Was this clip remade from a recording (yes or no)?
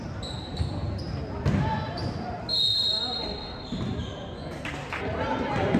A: no